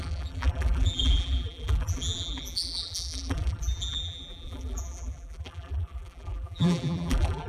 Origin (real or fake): fake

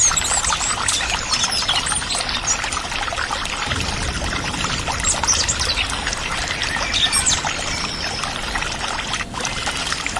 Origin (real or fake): real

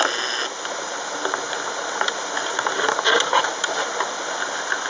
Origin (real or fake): real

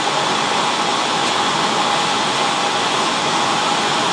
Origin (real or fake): fake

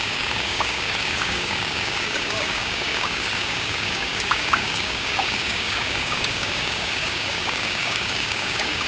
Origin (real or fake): fake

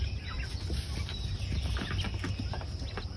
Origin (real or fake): real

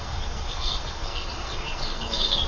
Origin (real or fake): fake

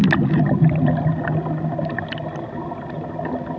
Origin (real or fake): real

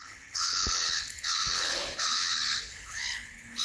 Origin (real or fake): fake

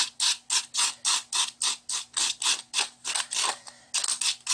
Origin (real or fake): real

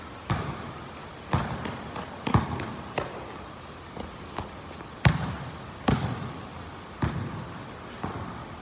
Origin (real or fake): real